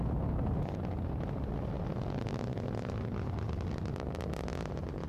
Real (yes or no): yes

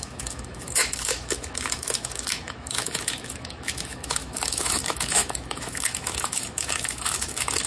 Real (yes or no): no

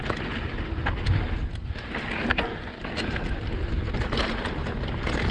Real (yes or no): yes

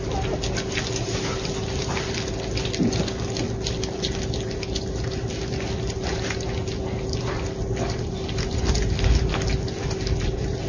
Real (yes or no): yes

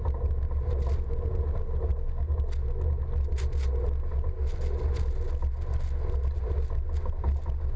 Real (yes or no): yes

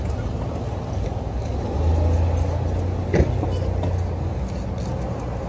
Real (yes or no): yes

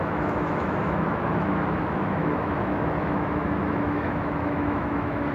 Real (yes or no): no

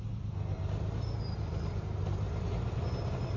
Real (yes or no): yes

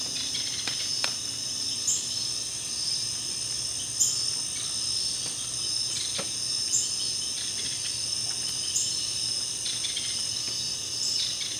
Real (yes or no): yes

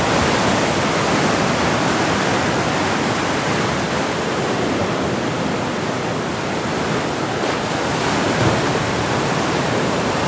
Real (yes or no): yes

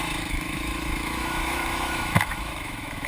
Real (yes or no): no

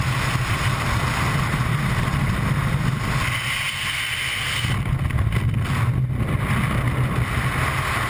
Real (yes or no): yes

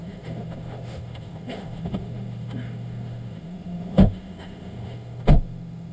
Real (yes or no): no